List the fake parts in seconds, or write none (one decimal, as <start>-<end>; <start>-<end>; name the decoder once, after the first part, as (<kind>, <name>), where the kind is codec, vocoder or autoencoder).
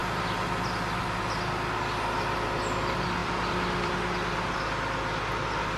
3.2-3.9 (vocoder, BigVGAN v2)